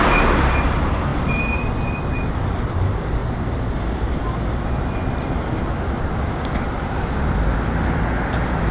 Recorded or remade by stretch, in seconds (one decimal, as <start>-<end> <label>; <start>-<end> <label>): 0.0-8.7 recorded